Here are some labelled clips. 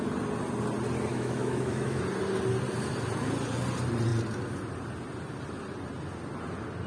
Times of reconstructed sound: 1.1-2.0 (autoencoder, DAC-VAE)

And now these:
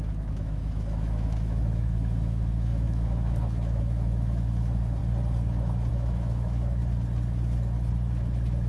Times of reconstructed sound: 0.0-5.0 (autoencoder, DAC-VAE); 5.9-6.8

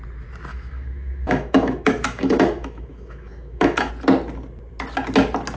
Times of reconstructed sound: 0.5-3.9 (autoencoder, DAC-VAE)

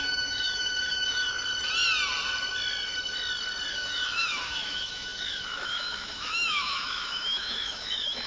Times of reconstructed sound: 0.0-1.3 (autoencoder, DAC-VAE); 3.7-8.3

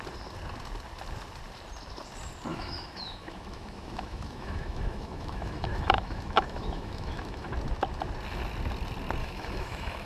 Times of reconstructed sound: 2.5-7.5 (autoencoder, DAC-VAE); 9.2-10.1

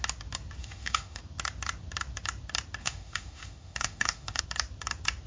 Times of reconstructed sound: 0.6-1.2 (autoencoder, DAC-VAE); 2.8-4.4